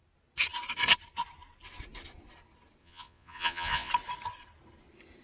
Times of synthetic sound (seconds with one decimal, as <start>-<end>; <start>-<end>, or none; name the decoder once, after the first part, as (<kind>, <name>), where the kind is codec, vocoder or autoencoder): 2.8-3.9 (vocoder, Vocos)